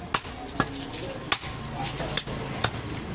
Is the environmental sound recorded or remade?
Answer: recorded